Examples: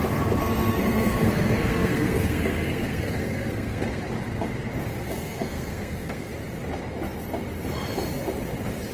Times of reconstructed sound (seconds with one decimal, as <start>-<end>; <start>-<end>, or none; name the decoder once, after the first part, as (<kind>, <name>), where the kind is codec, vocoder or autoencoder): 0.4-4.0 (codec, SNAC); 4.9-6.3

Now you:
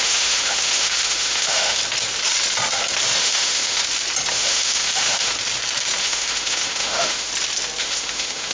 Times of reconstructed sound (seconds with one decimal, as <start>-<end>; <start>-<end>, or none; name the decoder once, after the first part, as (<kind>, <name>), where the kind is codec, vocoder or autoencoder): 0.0-1.8 (autoencoder, DAC-VAE); 3.2-3.8; 4.3-5.3; 6.0-7.3; 7.8-8.5

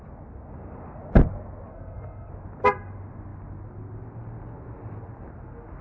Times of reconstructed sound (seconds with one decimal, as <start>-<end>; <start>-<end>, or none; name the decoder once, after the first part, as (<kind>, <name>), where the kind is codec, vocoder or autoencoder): 1.7-2.3 (codec, SNAC)